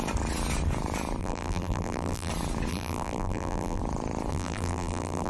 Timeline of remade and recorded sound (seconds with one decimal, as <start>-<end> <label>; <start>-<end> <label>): 0.0-1.2 recorded; 1.2-2.3 remade; 2.3-2.7 recorded; 2.7-3.8 remade; 3.8-4.3 recorded; 4.3-5.3 remade